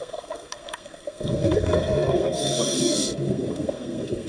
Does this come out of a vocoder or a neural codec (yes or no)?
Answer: yes